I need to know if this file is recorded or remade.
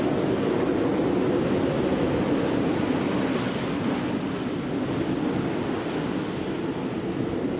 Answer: recorded